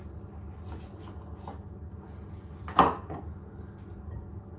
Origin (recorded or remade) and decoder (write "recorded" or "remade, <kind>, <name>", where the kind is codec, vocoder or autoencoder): recorded